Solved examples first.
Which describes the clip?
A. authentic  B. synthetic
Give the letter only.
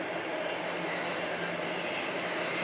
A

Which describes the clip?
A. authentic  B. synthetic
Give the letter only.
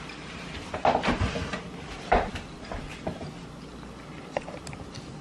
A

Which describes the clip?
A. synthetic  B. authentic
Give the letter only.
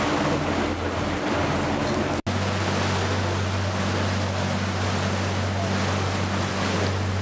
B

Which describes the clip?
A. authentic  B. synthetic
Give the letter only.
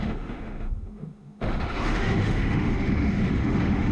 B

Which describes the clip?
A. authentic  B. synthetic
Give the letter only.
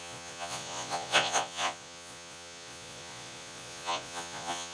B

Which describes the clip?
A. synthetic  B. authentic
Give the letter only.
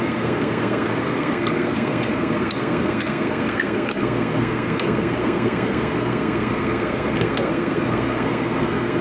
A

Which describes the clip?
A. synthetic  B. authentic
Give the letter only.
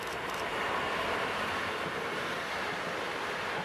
B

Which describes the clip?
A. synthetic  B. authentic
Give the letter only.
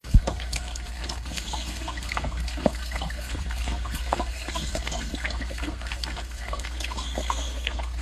A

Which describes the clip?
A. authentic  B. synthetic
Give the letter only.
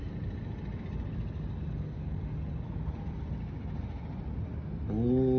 A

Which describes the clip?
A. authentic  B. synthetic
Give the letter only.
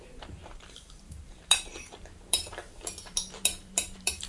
B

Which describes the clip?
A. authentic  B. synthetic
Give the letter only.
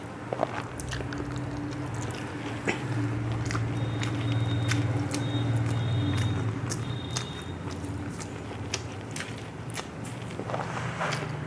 A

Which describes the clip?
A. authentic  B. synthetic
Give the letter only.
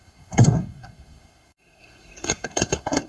B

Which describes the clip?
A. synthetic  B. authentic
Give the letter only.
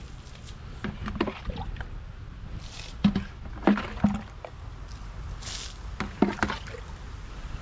B